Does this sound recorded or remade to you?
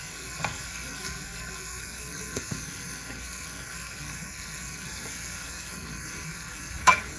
remade